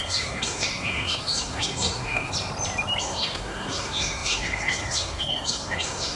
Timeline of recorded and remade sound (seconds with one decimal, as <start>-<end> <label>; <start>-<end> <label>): 0.0-2.3 remade; 2.3-3.0 recorded; 3.0-6.2 remade